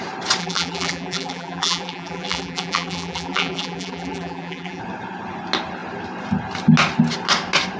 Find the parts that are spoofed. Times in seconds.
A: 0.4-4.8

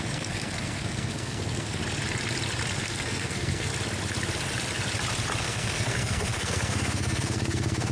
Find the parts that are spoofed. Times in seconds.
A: 0.0-1.8; 2.8-3.7; 5.4-7.9